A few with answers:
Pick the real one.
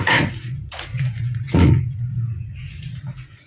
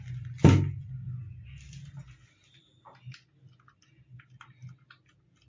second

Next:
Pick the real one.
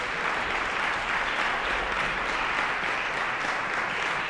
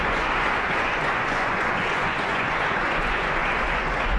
first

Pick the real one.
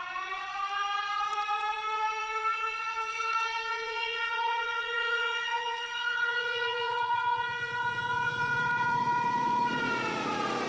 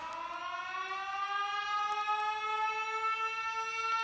second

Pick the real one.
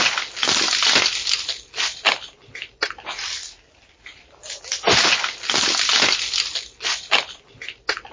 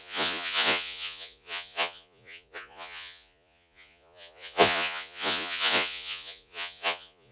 first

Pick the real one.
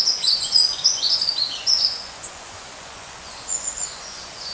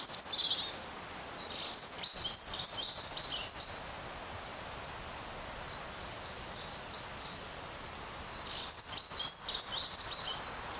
second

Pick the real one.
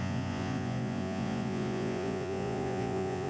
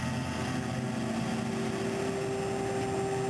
second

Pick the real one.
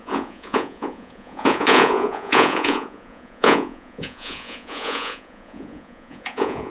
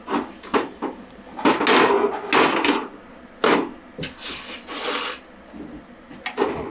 second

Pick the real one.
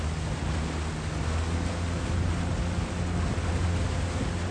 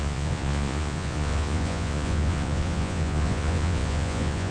first